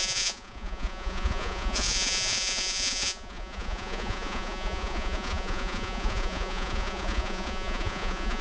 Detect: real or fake fake